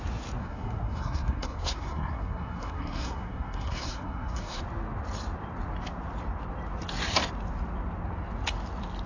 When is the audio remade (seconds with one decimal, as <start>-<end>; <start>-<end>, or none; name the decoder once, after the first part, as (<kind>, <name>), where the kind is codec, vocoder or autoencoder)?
0.4-4.6 (codec, SNAC)

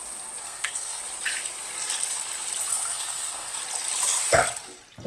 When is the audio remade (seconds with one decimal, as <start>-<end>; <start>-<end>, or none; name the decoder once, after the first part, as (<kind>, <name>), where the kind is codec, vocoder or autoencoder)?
0.4-1.0 (codec, SNAC); 2.7-3.6

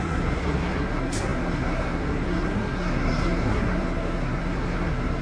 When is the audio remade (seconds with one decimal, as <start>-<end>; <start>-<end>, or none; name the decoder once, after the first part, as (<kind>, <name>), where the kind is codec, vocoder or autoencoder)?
0.0-5.2 (codec, SNAC)

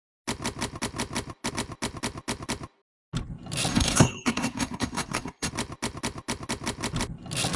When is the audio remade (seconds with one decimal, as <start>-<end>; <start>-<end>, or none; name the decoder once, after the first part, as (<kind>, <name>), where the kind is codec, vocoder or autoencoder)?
3.7-5.5 (codec, SNAC)